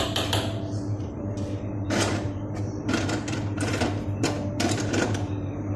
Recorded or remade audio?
remade